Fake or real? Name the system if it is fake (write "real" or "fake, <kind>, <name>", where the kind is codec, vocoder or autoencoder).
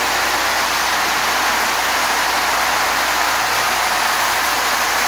real